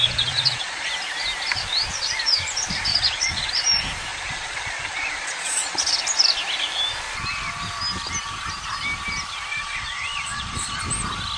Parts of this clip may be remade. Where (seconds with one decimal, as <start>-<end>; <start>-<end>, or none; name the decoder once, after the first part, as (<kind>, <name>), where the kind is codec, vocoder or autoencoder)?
0.0-0.9 (vocoder, Vocos); 2.9-3.5; 4.1-6.0; 9.5-10.8